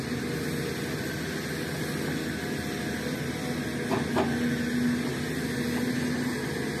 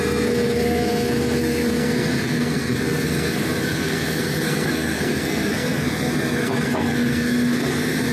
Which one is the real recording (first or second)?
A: first